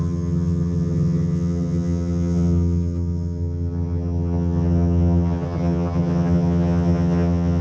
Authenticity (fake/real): fake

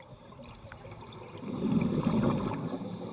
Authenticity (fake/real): real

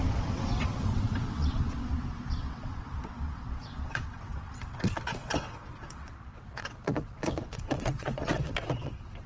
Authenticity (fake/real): fake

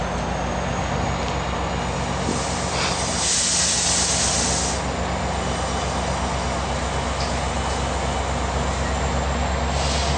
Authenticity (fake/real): real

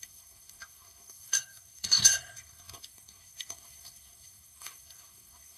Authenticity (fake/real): fake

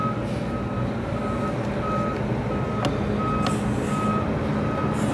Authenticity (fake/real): real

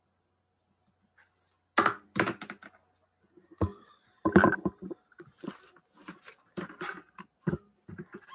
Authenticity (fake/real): real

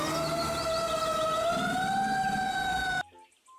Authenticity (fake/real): real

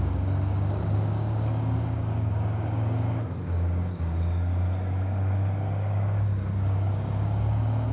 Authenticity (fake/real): fake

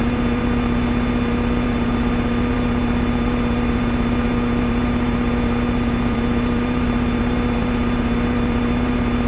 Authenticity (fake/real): fake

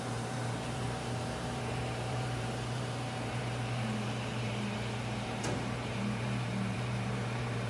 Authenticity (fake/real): fake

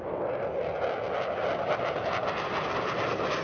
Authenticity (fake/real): real